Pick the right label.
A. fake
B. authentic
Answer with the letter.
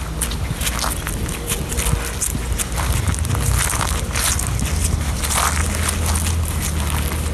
B